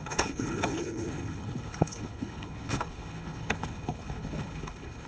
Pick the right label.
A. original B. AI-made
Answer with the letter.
B